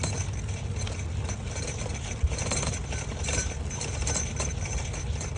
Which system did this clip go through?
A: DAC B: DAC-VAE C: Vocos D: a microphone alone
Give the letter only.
D